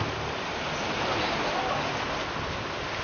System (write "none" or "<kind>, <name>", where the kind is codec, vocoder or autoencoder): none